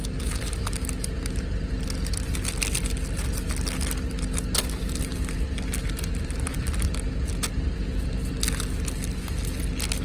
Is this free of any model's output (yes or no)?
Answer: yes